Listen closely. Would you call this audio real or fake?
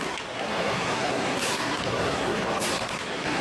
fake